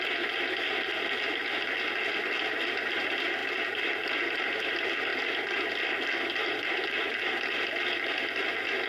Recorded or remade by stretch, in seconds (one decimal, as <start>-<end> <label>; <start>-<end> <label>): 0.0-3.4 recorded; 3.4-4.4 remade; 4.4-5.1 recorded; 5.1-6.7 remade; 6.7-8.9 recorded